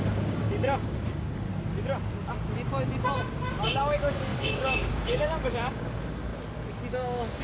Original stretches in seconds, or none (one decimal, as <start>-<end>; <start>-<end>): 1.5-3.6; 6.3-6.9